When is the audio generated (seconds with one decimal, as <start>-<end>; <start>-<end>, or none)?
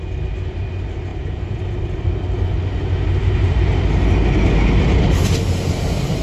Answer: 1.1-1.6; 3.2-3.8